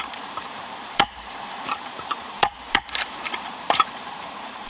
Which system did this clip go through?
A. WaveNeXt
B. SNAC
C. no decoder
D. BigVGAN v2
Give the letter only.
D